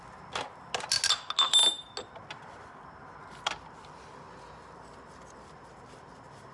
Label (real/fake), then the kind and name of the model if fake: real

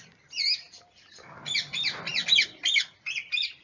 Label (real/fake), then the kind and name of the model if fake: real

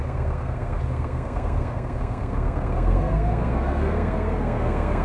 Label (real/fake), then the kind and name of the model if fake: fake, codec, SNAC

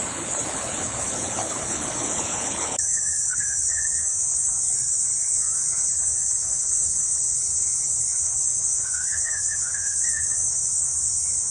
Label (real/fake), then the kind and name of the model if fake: fake, codec, HILCodec